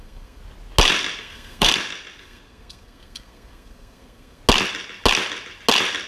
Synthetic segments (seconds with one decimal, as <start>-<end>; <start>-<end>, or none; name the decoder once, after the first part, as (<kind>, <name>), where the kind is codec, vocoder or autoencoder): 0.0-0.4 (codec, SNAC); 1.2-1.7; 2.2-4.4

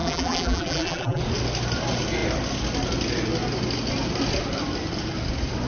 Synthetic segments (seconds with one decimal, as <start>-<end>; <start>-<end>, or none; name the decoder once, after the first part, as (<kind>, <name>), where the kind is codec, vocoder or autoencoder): 0.0-1.2 (vocoder, BigVGAN v2)

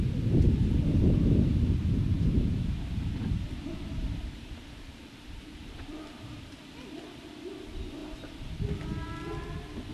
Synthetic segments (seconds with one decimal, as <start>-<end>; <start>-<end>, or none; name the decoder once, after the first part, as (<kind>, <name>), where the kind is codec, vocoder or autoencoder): 1.8-6.6 (vocoder, BigVGAN v2)